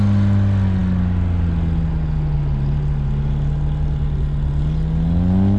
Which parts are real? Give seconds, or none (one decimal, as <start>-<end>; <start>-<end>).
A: 0.0-5.6

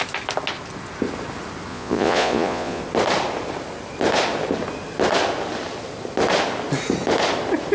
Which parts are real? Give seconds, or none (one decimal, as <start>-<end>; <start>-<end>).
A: 0.0-1.7; 2.8-7.7

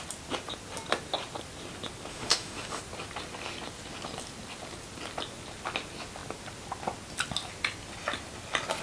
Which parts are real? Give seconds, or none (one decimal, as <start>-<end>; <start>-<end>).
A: 0.0-2.1; 2.8-8.8

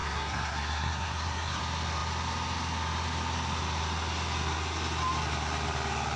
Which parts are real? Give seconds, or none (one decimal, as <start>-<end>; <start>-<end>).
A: 1.6-6.2

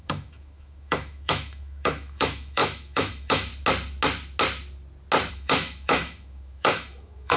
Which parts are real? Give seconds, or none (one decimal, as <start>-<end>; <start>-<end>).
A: 3.5-5.3

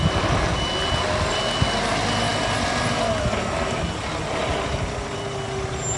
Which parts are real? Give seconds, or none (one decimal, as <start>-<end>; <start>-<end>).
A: 0.0-6.0